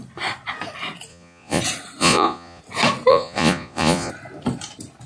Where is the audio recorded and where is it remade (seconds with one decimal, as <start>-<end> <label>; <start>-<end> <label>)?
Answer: 0.0-1.1 recorded; 1.1-1.6 remade; 1.6-2.0 recorded; 2.0-2.6 remade; 2.6-3.1 recorded; 3.1-4.1 remade; 4.1-5.1 recorded